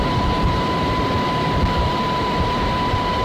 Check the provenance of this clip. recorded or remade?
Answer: remade